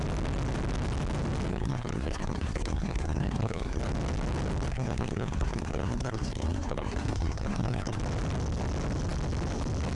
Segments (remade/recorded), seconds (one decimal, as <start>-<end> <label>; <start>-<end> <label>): 0.0-1.5 recorded; 1.5-3.8 remade; 3.8-4.7 recorded; 4.7-8.0 remade; 8.0-9.9 recorded